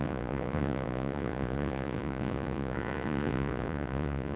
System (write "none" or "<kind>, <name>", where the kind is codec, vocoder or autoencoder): vocoder, Vocos